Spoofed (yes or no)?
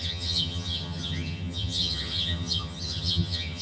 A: yes